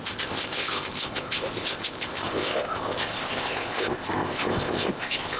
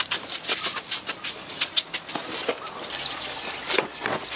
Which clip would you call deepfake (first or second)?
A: first